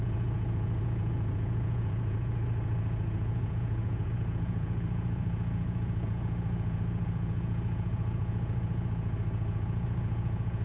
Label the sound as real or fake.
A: fake